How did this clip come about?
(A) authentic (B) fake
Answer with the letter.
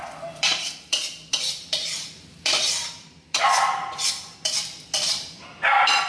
B